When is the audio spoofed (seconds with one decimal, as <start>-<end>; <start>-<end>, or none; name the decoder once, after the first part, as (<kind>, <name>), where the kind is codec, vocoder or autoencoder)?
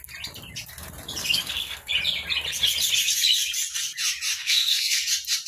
1.2-1.9 (codec, SNAC); 4.4-5.0